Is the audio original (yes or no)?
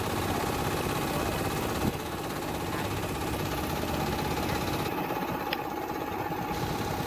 yes